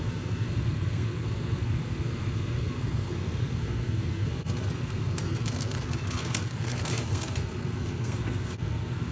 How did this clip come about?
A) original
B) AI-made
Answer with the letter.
B